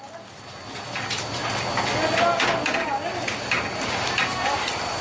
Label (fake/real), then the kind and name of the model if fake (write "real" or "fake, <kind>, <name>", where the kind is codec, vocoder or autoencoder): real